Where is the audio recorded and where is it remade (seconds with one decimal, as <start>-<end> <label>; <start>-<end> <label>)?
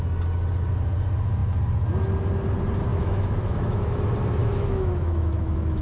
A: 0.0-2.9 recorded; 2.9-3.9 remade; 3.9-4.4 recorded; 4.4-5.8 remade